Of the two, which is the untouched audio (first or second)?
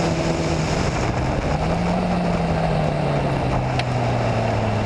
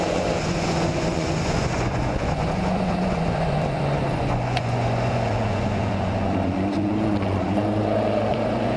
first